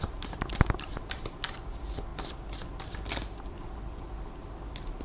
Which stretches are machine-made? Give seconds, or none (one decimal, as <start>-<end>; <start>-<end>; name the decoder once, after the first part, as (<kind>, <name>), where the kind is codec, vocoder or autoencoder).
none